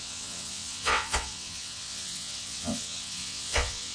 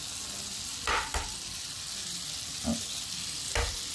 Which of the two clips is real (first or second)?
second